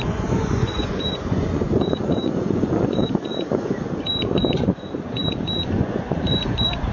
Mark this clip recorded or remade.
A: remade